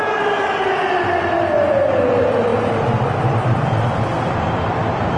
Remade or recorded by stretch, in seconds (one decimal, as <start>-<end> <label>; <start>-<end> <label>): 0.0-2.5 recorded; 2.5-5.2 remade